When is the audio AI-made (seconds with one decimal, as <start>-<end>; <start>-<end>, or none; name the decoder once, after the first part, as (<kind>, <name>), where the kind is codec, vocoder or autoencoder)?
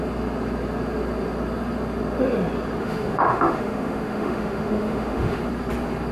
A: 2.8-5.4 (autoencoder, DAC-VAE)